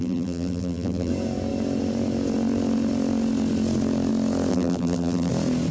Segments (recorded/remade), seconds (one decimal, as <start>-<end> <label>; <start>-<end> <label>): 0.0-1.1 remade; 1.1-4.5 recorded; 4.5-5.3 remade; 5.3-5.7 recorded

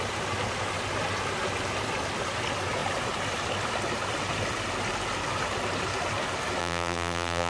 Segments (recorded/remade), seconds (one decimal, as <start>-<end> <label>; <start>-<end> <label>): 0.0-6.6 recorded; 6.6-7.5 remade